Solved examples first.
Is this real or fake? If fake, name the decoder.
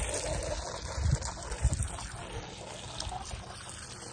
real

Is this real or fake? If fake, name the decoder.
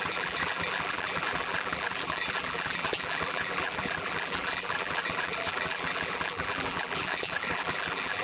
fake, vocoder, BigVGAN v2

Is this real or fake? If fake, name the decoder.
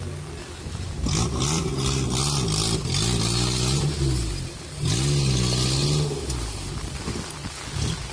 real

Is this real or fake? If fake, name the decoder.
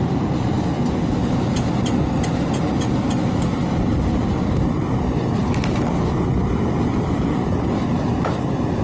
real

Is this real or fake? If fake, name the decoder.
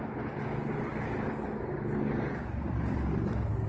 real